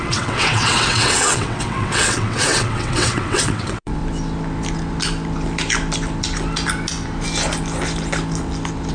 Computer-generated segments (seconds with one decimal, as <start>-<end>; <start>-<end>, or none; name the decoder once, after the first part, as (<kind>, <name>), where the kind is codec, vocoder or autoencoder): 0.0-4.0 (vocoder, WaveNeXt)